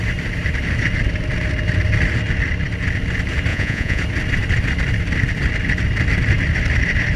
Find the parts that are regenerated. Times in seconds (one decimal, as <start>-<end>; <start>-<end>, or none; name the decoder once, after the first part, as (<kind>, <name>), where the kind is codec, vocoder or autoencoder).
3.5-4.0 (vocoder, Vocos)

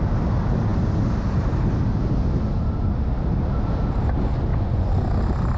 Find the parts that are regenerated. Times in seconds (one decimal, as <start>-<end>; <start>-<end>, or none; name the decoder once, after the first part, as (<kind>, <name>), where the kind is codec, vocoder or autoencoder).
4.5-5.1 (vocoder, Vocos)

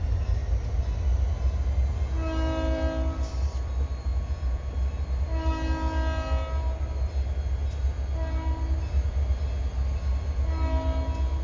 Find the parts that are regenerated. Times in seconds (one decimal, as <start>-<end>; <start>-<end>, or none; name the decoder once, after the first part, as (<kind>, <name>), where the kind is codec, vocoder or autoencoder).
4.1-4.7 (vocoder, Vocos)

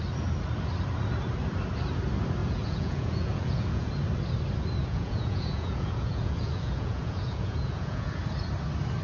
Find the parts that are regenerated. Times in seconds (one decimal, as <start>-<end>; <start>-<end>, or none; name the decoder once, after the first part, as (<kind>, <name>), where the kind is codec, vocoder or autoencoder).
2.4-3.9 (vocoder, Vocos); 4.8-8.2

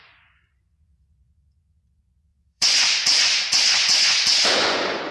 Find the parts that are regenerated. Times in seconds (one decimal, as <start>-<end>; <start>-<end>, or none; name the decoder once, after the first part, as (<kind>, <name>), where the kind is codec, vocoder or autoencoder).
0.0-5.1 (vocoder, Vocos)

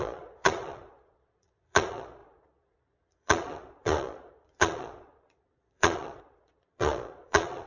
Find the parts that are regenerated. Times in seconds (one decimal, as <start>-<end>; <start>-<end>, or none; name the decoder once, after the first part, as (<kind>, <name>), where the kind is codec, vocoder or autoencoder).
0.0-7.7 (vocoder, Vocos)

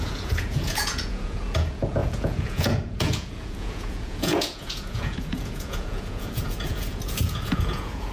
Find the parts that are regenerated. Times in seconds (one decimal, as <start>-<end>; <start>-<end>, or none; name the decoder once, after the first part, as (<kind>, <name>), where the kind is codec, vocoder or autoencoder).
0.0-8.1 (vocoder, Vocos)